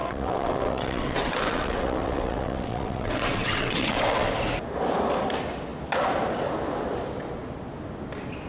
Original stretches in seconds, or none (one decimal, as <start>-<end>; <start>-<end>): 4.3-8.5